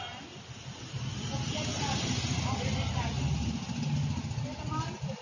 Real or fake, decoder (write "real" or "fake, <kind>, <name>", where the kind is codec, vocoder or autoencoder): real